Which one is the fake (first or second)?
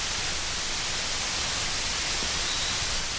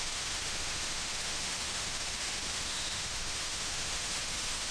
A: second